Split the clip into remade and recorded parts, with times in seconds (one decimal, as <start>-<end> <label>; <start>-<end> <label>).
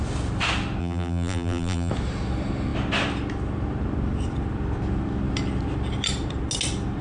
0.0-0.8 recorded; 0.8-1.9 remade; 1.9-7.0 recorded